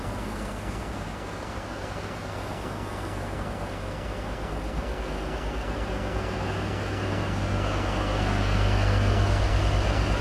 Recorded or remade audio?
remade